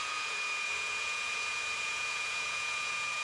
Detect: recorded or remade remade